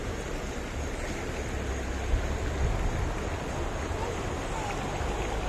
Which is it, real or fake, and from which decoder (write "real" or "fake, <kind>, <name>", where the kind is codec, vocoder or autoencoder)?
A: real